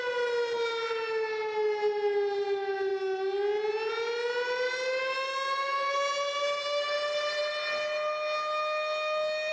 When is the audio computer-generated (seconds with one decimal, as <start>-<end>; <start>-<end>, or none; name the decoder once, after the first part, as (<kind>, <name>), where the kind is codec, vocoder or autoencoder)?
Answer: none

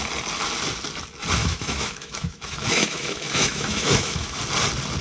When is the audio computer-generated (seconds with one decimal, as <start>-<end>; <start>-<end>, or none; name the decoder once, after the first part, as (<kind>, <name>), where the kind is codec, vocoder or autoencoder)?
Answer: 1.4-4.4 (autoencoder, DAC-VAE)

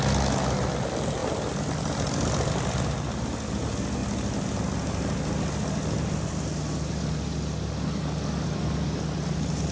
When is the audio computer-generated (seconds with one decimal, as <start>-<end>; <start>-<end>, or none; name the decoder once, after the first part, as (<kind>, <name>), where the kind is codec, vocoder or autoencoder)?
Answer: none

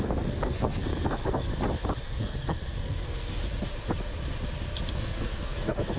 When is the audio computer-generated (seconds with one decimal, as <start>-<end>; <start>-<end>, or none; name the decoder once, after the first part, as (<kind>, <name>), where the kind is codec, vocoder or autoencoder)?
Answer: 0.0-1.5 (codec, SNAC); 2.0-3.4; 4.9-6.0

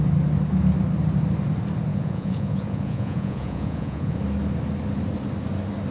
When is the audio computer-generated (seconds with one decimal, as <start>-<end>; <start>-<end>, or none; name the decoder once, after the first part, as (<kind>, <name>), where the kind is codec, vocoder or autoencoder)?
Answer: 1.9-4.2 (vocoder, Vocos)

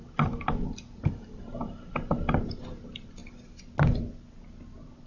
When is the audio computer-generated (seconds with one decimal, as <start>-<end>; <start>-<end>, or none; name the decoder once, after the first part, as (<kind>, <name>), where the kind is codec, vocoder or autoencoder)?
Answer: 1.0-1.9 (vocoder, BigVGAN v2)